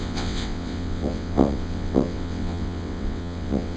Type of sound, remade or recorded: remade